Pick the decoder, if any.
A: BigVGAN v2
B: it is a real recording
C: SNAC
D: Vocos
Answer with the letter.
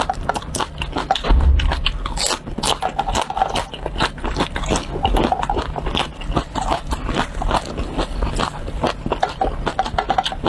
B